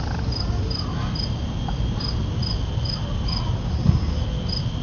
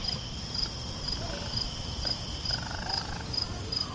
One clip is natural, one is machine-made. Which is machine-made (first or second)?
second